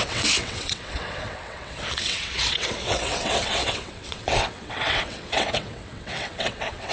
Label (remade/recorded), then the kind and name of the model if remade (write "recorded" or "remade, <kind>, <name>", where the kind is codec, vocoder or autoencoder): remade, vocoder, WaveNeXt